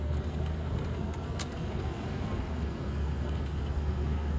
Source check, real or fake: fake